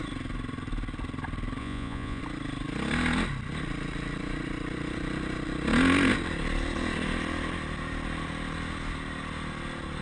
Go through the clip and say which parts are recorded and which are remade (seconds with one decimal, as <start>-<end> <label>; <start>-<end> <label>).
0.0-1.6 recorded; 1.6-2.2 remade; 2.2-10.0 recorded